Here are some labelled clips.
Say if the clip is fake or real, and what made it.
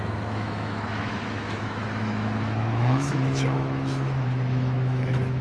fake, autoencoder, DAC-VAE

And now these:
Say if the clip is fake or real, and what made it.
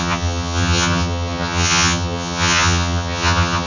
fake, vocoder, HiFi-GAN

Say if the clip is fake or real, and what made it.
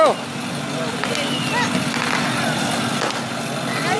real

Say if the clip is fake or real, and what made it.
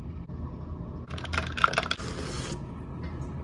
real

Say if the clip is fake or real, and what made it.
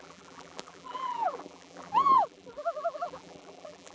fake, vocoder, BigVGAN v2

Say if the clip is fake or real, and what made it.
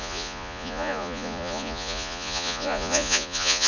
fake, vocoder, Vocos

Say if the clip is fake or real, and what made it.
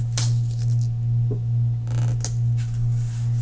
real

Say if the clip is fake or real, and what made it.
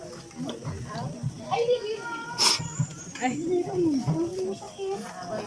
real